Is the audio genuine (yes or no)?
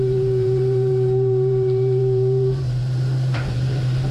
no